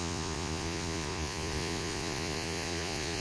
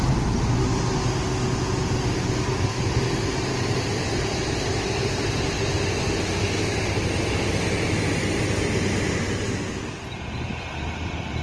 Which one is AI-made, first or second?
first